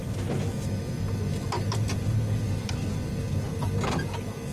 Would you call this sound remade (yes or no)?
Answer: no